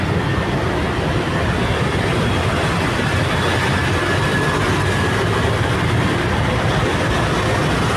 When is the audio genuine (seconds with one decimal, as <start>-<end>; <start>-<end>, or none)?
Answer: 0.0-8.0